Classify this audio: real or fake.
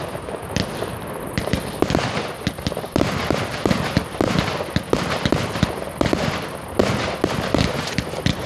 fake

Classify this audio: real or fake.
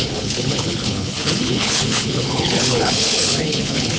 fake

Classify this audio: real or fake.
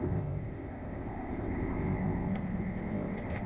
fake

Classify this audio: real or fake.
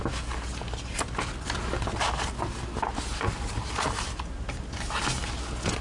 real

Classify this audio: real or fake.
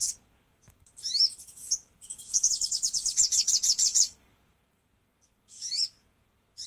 fake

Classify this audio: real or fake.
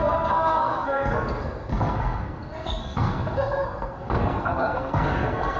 fake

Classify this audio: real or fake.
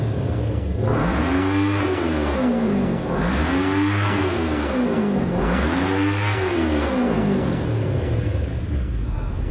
fake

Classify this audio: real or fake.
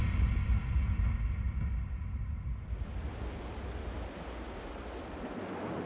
real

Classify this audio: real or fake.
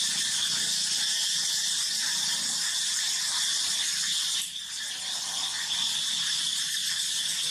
real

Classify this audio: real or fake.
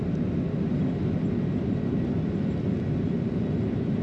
real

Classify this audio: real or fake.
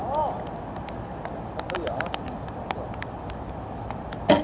fake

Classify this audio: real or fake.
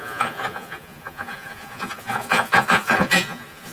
fake